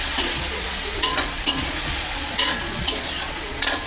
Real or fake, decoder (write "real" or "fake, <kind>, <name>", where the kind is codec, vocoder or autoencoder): fake, vocoder, Vocos